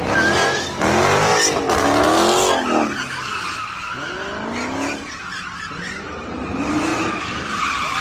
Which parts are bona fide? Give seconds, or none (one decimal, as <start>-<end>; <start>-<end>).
1.3-5.7; 6.9-7.6